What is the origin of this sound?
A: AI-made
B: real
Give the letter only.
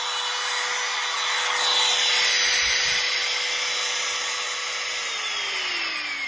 B